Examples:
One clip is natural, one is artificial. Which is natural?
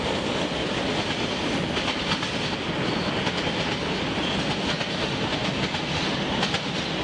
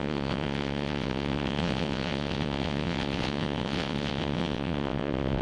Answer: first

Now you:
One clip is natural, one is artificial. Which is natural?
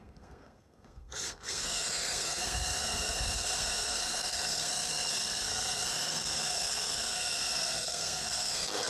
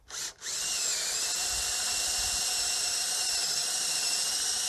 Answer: second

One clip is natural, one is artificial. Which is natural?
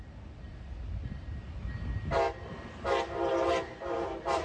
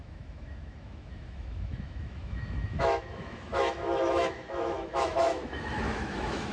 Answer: first